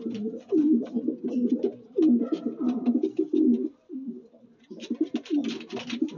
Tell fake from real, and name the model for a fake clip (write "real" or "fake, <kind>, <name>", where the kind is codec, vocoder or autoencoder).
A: real